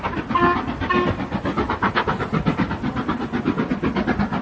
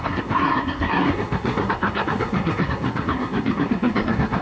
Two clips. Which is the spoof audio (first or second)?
second